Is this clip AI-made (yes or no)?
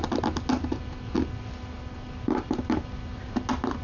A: no